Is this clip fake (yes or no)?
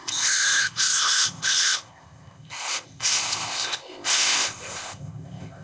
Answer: yes